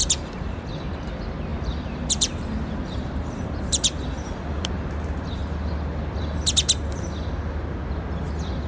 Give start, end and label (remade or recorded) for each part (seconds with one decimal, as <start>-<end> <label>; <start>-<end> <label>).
0.0-1.5 recorded; 1.5-4.7 remade; 4.7-8.7 recorded